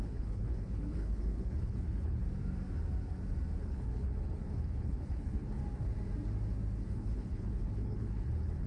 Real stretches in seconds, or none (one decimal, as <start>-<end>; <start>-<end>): 2.2-3.6; 5.6-6.9